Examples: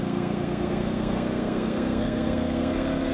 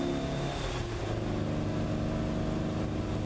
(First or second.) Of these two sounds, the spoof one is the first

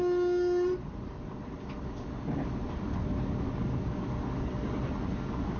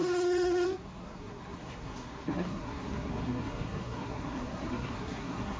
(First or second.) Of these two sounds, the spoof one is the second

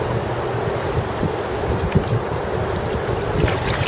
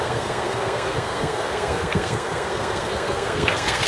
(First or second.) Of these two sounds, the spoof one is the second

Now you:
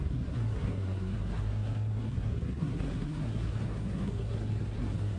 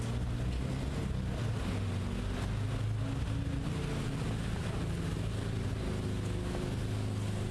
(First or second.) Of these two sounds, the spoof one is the first